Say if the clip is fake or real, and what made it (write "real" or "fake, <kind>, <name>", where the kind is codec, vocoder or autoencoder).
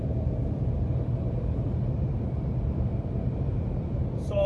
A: real